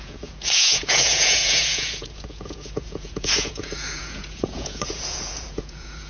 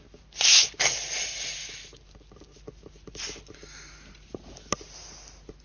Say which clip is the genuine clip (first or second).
second